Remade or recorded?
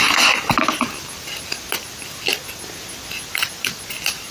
recorded